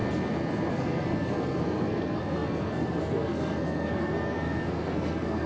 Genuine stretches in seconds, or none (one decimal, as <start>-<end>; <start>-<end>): 0.0-0.7